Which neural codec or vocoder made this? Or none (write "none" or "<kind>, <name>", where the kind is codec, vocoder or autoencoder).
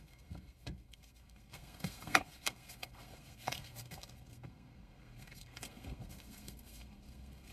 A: codec, SNAC